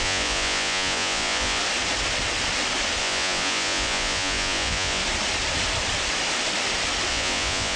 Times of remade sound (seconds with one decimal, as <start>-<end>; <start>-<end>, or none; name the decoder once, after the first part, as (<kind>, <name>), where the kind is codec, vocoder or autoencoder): 0.0-1.6 (vocoder, Vocos); 3.0-5.0; 7.1-7.8